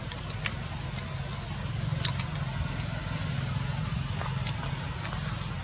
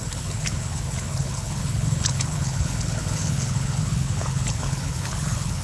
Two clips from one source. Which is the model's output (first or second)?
second